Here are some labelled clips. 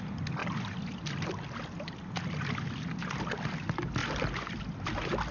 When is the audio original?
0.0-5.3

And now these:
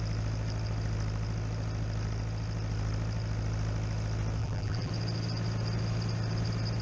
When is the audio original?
0.0-4.4; 4.9-6.8

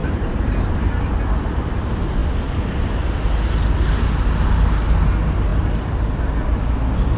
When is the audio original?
0.8-7.2

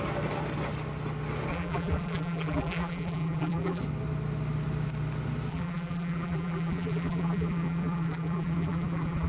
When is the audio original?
0.0-1.5; 3.8-5.5

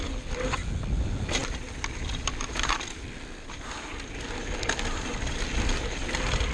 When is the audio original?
0.0-6.5

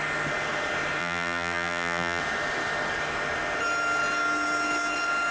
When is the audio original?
0.0-1.0; 2.2-5.3

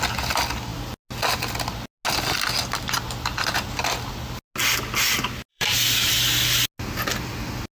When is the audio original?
0.0-5.5; 6.1-7.7

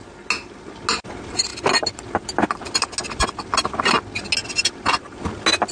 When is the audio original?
0.0-1.5; 2.8-5.7